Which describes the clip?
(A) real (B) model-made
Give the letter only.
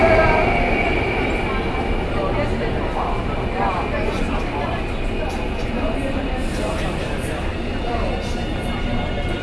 A